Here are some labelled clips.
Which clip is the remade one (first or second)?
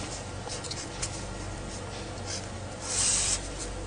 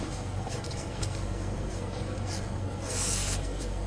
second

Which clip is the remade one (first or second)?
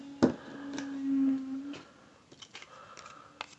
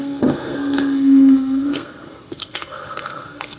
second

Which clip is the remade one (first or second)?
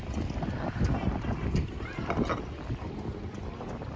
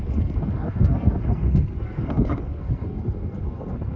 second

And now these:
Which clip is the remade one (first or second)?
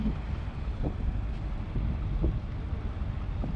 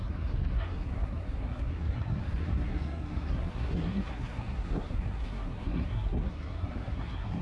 second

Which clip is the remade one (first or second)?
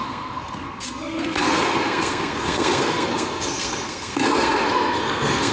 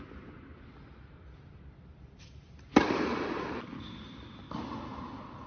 first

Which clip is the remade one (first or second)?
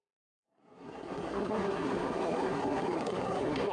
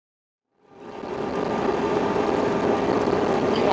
first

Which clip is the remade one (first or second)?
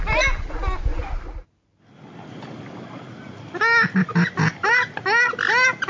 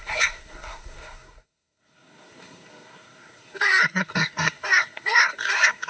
second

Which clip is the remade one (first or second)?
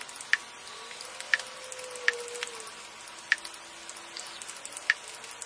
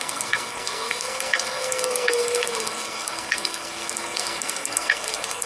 second